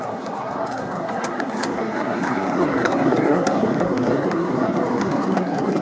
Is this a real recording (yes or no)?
no